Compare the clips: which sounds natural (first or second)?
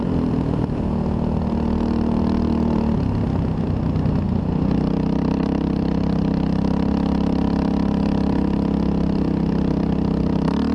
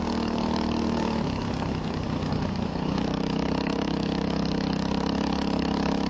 first